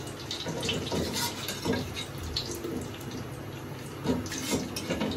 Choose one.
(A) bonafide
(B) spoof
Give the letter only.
A